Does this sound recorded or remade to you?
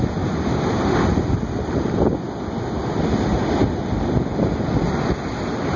recorded